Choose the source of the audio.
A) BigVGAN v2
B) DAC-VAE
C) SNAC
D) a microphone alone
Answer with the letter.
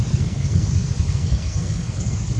C